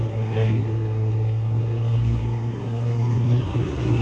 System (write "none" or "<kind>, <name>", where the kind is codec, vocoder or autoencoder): codec, SNAC